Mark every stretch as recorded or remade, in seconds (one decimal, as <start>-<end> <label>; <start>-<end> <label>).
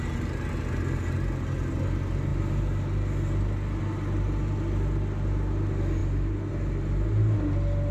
0.0-7.9 recorded